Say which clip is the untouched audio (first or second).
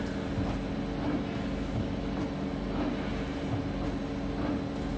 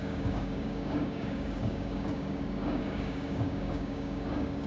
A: first